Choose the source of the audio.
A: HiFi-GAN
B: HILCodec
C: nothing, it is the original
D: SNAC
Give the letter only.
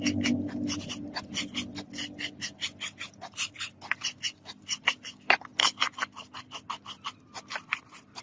C